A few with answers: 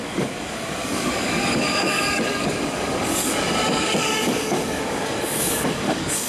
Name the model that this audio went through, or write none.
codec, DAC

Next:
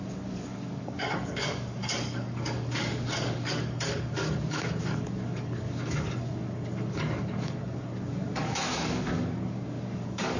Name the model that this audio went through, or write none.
codec, DAC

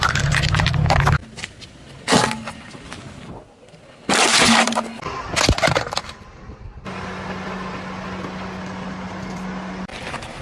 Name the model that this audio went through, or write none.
none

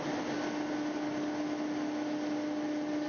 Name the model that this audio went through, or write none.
none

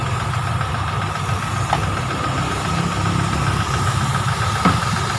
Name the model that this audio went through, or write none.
none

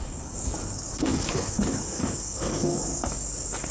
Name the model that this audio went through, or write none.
codec, DAC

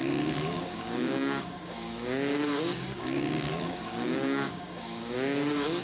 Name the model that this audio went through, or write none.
codec, DAC